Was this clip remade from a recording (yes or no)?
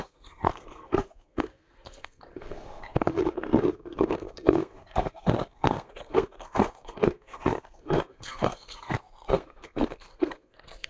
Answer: yes